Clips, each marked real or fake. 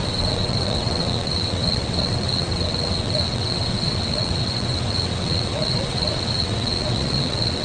fake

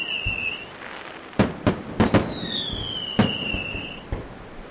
real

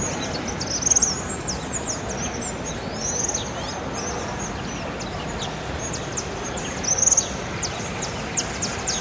real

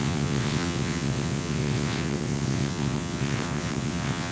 fake